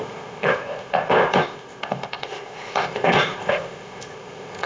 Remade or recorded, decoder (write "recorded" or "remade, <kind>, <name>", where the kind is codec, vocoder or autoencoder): remade, codec, ZipCodec